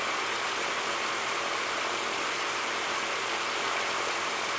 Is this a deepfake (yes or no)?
yes